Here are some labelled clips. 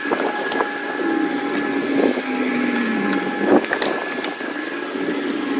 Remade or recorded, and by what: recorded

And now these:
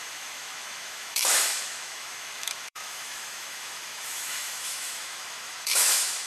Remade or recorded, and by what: remade, autoencoder, DAC-VAE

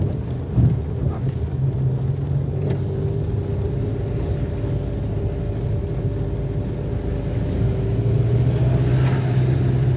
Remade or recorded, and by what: recorded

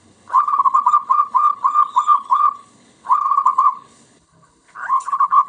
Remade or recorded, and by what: remade, codec, HILCodec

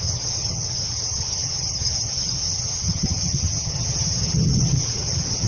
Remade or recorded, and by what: remade, vocoder, HiFi-GAN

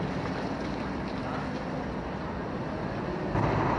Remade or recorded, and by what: recorded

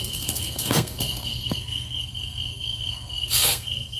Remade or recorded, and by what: remade, codec, SNAC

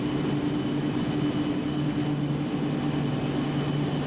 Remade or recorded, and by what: recorded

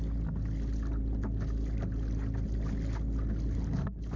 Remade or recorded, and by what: recorded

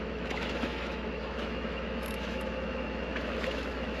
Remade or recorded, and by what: remade, autoencoder, DAC-VAE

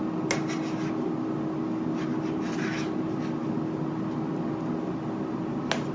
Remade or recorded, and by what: recorded